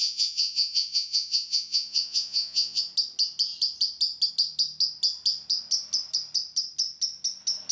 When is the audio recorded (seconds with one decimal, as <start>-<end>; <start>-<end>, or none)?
2.8-7.7